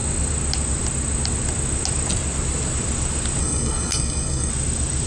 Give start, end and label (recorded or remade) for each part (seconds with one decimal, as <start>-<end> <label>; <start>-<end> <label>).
0.0-3.4 recorded; 3.4-4.5 remade; 4.5-5.1 recorded